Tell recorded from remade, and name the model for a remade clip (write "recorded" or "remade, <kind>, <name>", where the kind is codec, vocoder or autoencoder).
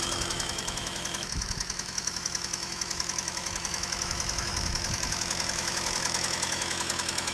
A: remade, autoencoder, DAC-VAE